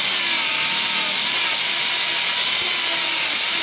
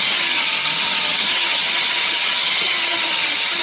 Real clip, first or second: first